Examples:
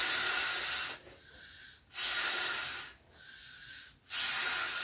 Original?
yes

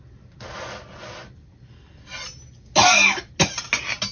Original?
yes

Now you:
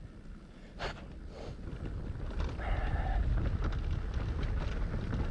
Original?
yes